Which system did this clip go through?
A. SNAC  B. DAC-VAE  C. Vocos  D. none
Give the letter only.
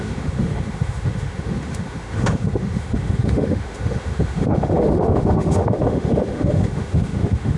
B